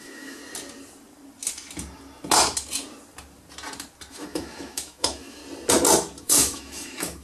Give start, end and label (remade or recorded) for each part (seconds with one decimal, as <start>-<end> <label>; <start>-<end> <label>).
0.0-0.4 remade; 0.4-4.1 recorded; 4.1-5.4 remade; 5.4-6.2 recorded; 6.2-7.2 remade